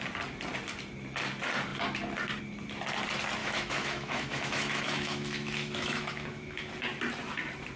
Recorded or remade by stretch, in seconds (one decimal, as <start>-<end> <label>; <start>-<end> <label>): 0.0-3.4 recorded; 3.4-6.7 remade; 6.7-7.8 recorded